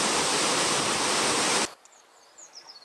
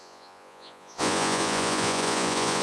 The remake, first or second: second